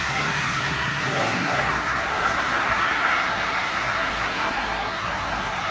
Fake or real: fake